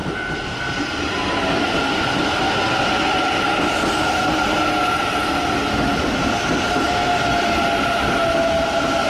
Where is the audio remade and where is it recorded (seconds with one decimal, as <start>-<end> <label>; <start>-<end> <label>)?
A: 0.0-2.4 remade; 2.4-9.1 recorded